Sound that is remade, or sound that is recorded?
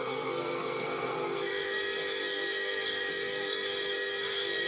remade